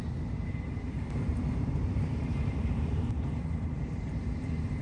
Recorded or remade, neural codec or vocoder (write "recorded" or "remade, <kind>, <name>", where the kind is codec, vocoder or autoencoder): remade, vocoder, BigVGAN v2